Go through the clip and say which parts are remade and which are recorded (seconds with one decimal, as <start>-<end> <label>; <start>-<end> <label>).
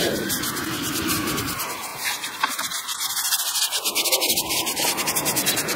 0.0-5.8 recorded